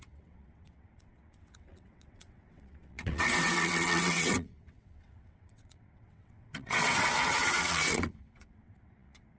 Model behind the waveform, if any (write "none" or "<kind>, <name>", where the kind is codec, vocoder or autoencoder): vocoder, WaveNeXt